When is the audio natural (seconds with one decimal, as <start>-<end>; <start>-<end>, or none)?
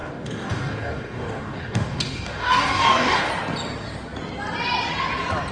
3.3-5.5